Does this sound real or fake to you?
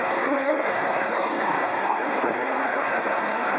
fake